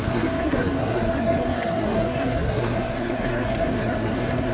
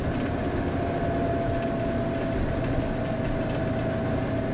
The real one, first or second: second